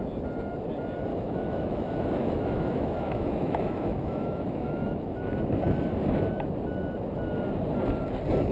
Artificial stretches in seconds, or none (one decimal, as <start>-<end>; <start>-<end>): 1.1-5.3